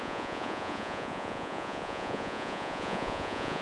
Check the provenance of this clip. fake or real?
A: fake